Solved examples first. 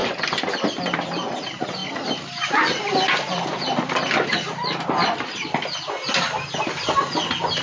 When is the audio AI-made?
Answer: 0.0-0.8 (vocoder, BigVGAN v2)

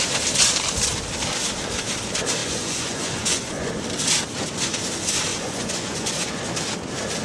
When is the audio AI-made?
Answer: 2.4-3.7 (vocoder, Vocos); 5.3-6.4

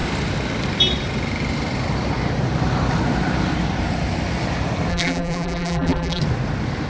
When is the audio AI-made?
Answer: 4.9-6.2 (vocoder, BigVGAN v2)

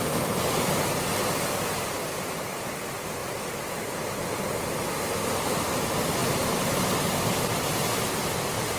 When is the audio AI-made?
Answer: 1.2-1.9 (vocoder, BigVGAN v2); 6.2-7.2

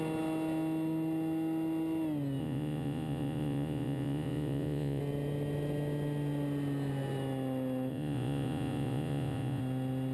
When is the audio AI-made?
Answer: 2.4-5.0 (vocoder, Vocos); 7.9-9.6

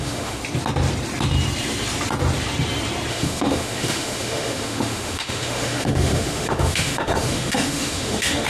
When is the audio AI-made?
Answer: 0.0-0.4 (autoencoder, DAC-VAE); 3.1-8.5